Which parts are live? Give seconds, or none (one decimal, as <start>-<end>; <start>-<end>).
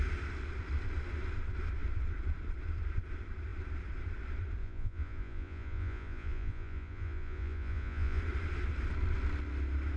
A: 0.0-4.6; 8.2-10.0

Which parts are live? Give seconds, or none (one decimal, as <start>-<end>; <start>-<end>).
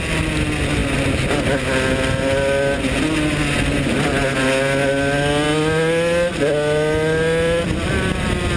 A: 0.0-8.6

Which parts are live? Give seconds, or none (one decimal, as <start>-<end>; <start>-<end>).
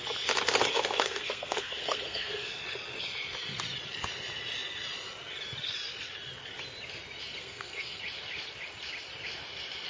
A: 0.0-0.7; 2.6-7.4; 8.0-9.9